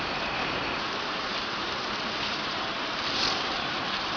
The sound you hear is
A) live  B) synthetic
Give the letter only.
B